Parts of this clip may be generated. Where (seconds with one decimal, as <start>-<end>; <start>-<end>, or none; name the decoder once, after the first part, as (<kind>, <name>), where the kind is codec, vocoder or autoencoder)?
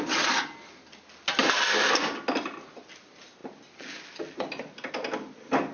none